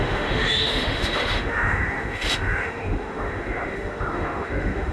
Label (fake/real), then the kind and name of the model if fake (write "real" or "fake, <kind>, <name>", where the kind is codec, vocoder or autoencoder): fake, autoencoder, DAC-VAE